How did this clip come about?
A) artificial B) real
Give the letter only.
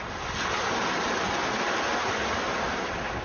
B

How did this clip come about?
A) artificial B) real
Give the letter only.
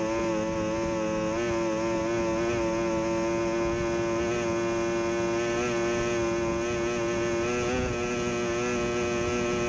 B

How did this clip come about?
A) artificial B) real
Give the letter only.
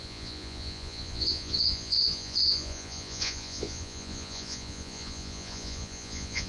A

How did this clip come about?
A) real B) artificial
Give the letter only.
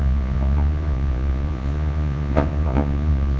B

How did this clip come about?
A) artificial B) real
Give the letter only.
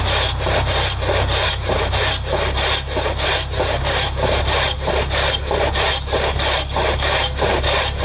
B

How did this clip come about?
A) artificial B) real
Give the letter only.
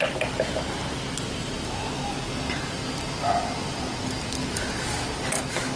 B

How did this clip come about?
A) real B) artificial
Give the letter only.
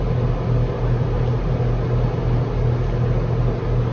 A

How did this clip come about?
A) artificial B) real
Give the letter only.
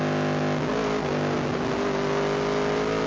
B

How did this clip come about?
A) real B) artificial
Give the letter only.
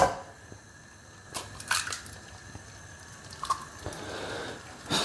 A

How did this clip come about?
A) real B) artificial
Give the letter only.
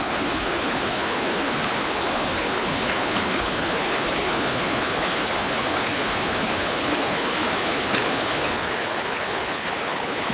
B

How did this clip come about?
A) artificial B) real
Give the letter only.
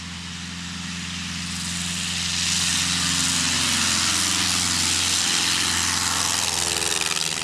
B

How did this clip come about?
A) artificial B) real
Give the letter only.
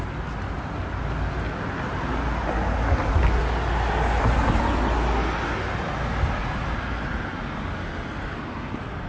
B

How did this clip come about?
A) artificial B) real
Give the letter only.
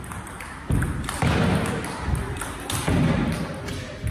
B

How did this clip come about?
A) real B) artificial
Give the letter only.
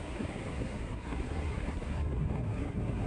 B